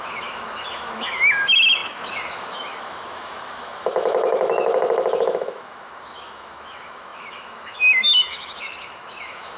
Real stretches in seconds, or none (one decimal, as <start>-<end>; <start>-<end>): none